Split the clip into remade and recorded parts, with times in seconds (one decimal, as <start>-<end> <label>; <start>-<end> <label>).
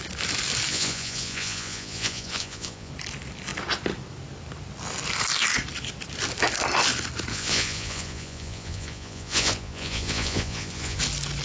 0.0-0.7 recorded; 0.7-2.9 remade; 2.9-7.3 recorded; 7.3-11.0 remade; 11.0-11.4 recorded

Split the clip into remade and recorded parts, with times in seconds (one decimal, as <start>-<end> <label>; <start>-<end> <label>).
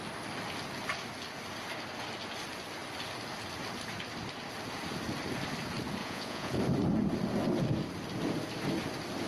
0.0-6.0 recorded; 6.0-6.6 remade; 6.6-9.3 recorded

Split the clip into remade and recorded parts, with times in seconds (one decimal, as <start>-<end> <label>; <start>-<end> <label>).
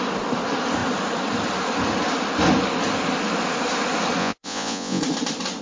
0.0-4.2 recorded; 4.2-5.0 remade; 5.0-5.6 recorded